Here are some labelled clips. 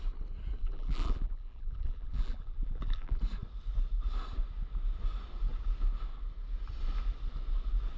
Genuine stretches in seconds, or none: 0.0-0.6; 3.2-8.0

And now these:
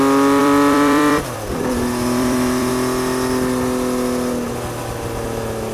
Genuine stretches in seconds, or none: 0.0-0.4; 2.7-5.7

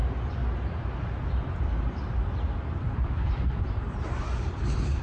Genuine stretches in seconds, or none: 0.0-1.3

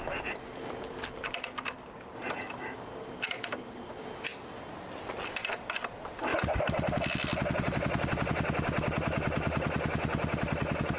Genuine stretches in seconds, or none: 0.0-11.0